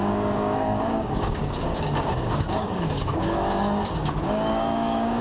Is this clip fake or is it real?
fake